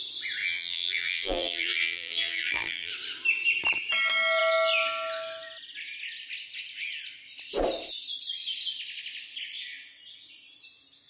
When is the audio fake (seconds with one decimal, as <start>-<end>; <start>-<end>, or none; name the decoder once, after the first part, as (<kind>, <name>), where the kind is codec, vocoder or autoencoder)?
0.4-2.9 (vocoder, BigVGAN v2)